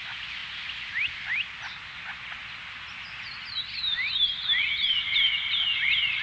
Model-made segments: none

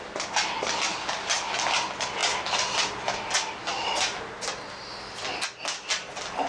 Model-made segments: none

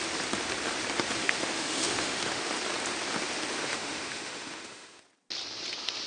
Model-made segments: 1.2-2.5 (autoencoder, DAC-VAE); 3.6-5.0

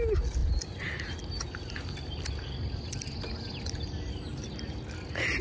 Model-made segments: none